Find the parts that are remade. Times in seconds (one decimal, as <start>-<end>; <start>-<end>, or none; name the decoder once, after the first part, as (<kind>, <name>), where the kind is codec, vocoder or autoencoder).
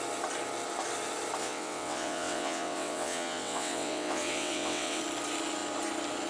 1.4-5.0 (vocoder, WaveNeXt)